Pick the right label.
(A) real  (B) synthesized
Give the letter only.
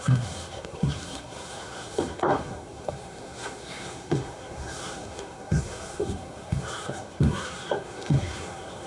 B